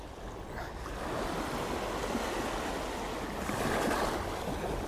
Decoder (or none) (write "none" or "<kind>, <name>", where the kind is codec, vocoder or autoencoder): none